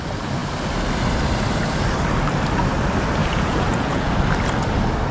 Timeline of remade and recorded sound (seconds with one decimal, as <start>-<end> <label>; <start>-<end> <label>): 0.0-3.2 recorded; 3.2-4.1 remade; 4.1-5.1 recorded